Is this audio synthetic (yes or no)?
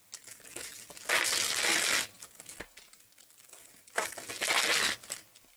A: no